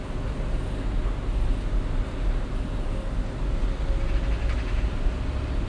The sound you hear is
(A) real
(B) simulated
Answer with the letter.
A